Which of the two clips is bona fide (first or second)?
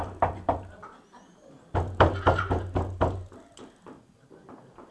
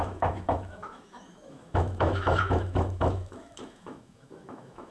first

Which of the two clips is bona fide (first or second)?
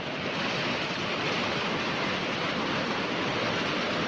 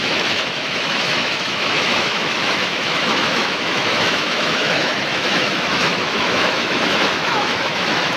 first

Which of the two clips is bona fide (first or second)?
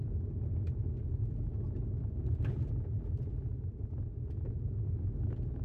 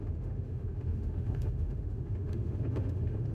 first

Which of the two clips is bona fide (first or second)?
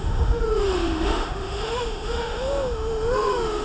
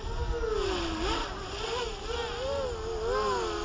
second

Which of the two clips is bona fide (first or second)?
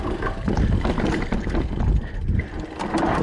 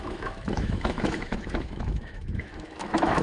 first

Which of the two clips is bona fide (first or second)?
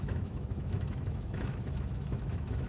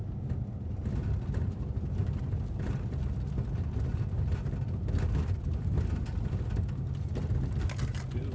second